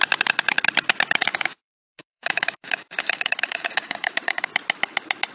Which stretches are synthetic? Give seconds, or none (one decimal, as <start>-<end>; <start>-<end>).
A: 1.3-4.5